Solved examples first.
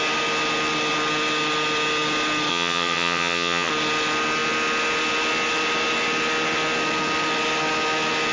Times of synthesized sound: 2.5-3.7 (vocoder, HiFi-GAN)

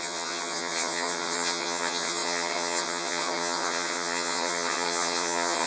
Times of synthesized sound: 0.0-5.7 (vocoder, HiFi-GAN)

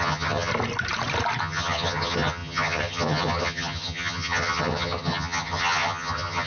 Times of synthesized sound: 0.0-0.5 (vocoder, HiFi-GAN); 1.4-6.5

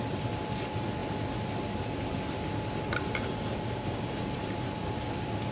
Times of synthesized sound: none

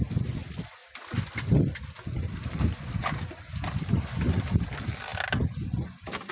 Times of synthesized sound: none

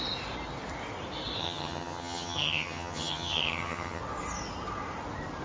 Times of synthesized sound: 1.4-4.0 (vocoder, HiFi-GAN)

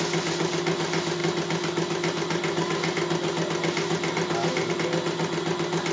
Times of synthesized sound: none

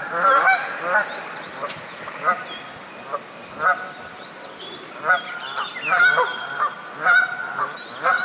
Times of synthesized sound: none